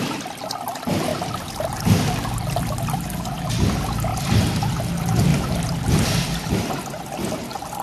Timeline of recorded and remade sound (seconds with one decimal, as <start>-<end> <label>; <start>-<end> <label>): 0.0-1.1 recorded; 1.1-3.1 remade; 3.1-4.1 recorded; 4.1-4.7 remade; 4.7-5.3 recorded; 5.3-6.5 remade; 6.5-7.8 recorded